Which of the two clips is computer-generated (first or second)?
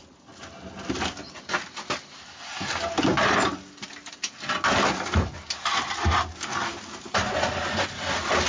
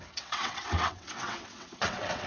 second